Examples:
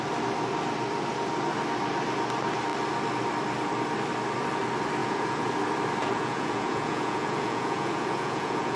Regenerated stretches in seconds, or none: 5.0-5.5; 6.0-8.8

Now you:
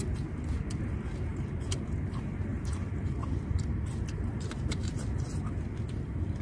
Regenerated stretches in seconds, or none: 1.3-1.8; 2.5-4.9

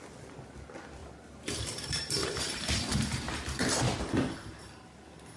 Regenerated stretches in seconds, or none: 1.0-4.2

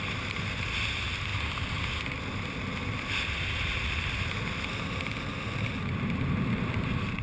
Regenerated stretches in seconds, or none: none